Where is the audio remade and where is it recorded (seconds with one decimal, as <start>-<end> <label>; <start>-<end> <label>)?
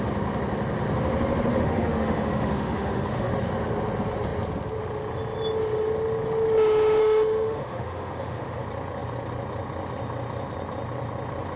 0.0-1.5 recorded; 1.5-3.3 remade; 3.3-7.0 recorded; 7.0-8.6 remade; 8.6-11.6 recorded